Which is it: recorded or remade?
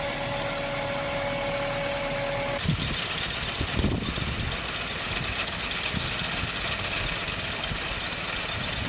recorded